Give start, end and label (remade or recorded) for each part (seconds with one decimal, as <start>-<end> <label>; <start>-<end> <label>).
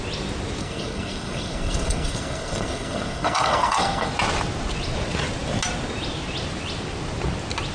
0.0-0.6 recorded; 0.6-4.1 remade; 4.1-7.7 recorded